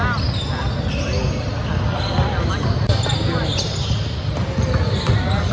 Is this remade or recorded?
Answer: recorded